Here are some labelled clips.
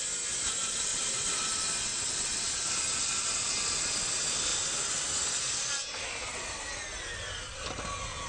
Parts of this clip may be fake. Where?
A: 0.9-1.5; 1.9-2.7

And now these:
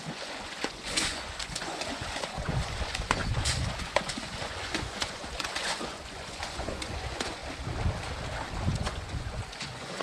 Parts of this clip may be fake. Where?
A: 0.0-7.4; 8.7-10.0

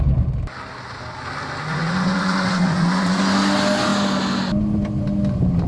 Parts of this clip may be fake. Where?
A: 1.7-3.2